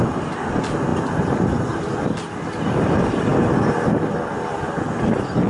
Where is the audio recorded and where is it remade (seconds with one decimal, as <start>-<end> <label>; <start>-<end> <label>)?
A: 0.0-5.5 recorded